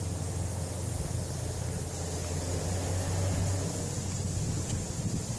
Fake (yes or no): yes